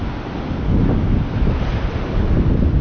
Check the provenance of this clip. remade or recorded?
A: recorded